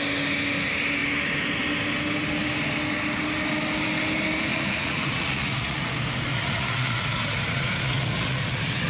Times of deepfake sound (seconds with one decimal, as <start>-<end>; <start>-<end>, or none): 4.5-5.8; 6.3-8.9